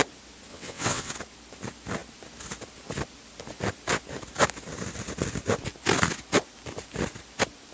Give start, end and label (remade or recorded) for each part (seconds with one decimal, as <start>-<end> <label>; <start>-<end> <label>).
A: 0.0-0.5 recorded; 0.5-1.1 remade; 1.1-7.7 recorded